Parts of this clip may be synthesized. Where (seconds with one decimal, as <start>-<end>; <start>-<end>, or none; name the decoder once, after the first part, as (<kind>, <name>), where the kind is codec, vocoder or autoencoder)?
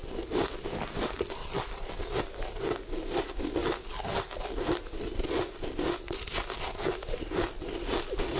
1.4-2.2 (vocoder, BigVGAN v2)